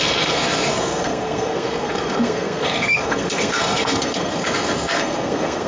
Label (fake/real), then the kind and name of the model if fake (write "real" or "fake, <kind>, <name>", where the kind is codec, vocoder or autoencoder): fake, codec, SNAC